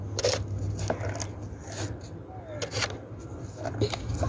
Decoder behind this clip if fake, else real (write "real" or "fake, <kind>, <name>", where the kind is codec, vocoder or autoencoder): real